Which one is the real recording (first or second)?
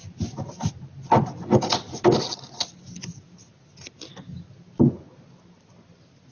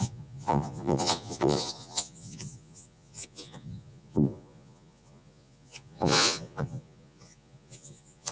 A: first